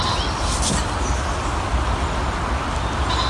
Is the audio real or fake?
real